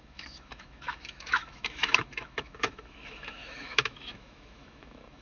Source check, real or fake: fake